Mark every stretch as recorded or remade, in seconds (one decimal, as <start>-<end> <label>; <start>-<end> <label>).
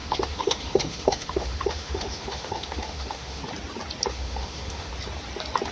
0.0-3.4 remade; 3.4-4.1 recorded; 4.1-4.9 remade; 4.9-5.7 recorded